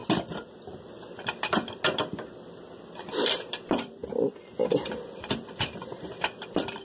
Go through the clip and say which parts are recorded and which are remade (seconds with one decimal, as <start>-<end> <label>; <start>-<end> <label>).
0.0-1.9 recorded; 1.9-4.0 remade; 4.0-4.7 recorded; 4.7-6.8 remade